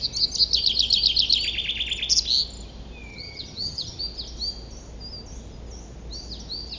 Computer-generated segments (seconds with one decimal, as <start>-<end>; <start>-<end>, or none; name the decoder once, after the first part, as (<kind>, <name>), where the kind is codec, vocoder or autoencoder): 3.1-4.0 (vocoder, HiFi-GAN)